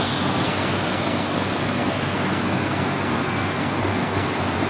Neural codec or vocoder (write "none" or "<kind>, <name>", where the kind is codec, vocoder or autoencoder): codec, SNAC